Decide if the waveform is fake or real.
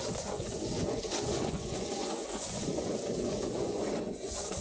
fake